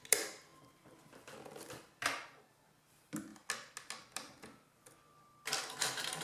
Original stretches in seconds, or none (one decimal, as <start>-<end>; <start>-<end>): 0.0-6.2